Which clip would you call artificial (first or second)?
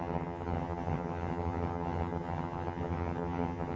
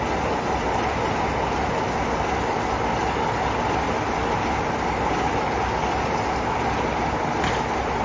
first